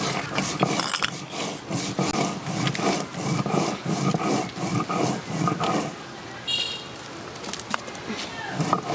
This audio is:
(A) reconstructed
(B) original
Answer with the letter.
B